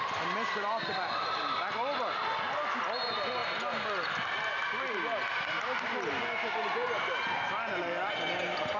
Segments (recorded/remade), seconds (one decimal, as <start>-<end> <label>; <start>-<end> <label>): 0.0-8.8 recorded